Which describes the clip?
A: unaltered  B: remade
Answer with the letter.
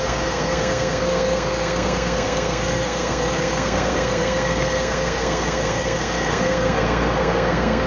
B